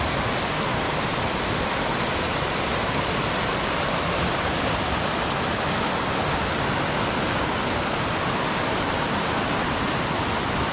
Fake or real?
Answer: real